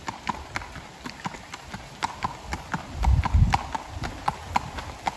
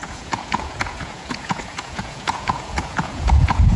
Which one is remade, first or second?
second